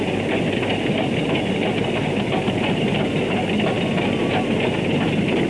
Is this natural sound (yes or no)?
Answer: yes